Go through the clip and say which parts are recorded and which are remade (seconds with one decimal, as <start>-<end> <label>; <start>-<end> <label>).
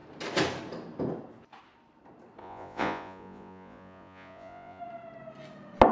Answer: 0.0-2.4 recorded; 2.4-4.8 remade; 4.8-5.9 recorded